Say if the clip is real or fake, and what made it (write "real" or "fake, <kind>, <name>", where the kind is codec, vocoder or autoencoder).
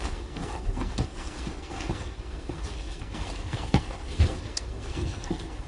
fake, codec, SNAC